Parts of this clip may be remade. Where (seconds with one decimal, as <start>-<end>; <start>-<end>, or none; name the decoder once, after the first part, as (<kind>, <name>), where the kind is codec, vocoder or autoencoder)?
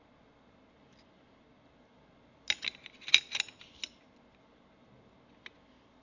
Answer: none